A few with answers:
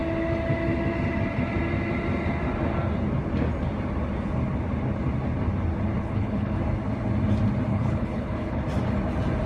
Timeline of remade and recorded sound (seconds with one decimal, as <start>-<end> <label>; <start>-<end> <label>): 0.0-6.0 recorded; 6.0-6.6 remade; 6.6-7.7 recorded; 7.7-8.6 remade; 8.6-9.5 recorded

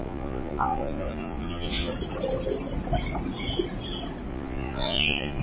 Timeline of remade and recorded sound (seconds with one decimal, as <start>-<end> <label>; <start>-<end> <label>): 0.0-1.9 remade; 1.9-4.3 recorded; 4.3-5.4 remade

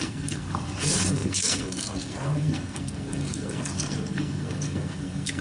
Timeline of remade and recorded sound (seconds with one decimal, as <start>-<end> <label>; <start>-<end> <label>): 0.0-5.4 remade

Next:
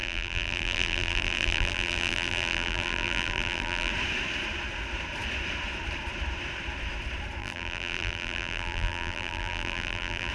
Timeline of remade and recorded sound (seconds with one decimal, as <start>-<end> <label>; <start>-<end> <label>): 0.0-3.9 remade; 3.9-7.4 recorded; 7.4-10.3 remade